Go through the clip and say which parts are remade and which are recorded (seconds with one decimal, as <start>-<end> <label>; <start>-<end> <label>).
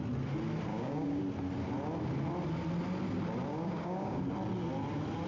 0.0-0.7 recorded; 0.7-1.2 remade; 1.2-3.5 recorded; 3.5-4.2 remade; 4.2-5.3 recorded